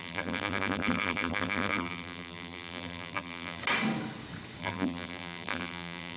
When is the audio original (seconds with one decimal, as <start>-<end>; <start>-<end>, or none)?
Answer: 3.6-4.6